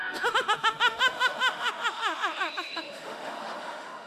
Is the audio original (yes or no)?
no